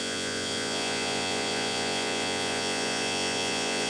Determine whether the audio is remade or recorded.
remade